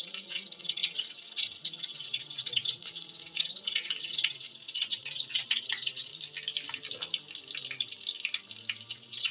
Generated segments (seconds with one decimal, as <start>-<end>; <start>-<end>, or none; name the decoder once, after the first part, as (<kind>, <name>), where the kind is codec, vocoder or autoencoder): 0.0-6.1 (vocoder, WaveNeXt); 8.9-9.3

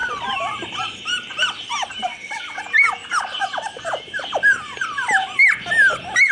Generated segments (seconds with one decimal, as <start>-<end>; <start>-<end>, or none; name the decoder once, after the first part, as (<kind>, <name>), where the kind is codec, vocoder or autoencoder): 2.1-2.6 (vocoder, WaveNeXt)

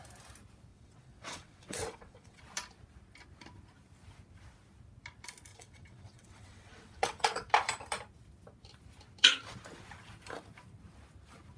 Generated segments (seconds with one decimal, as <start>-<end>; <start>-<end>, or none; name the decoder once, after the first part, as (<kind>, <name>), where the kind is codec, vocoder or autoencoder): 0.7-2.4 (vocoder, WaveNeXt); 5.5-7.5

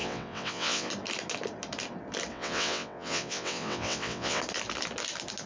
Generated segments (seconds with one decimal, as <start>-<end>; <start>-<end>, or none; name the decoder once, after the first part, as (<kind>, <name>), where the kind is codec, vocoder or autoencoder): 0.0-0.9 (vocoder, WaveNeXt); 2.3-4.4

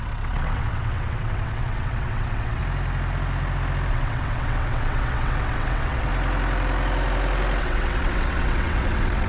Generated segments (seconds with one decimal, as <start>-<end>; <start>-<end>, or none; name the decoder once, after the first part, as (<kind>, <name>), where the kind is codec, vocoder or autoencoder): 0.0-2.6 (vocoder, WaveNeXt); 3.9-6.1; 7.6-9.3

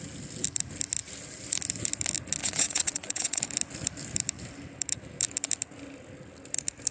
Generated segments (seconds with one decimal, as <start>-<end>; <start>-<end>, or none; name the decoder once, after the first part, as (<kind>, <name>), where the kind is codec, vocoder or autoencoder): 2.4-3.4 (vocoder, WaveNeXt)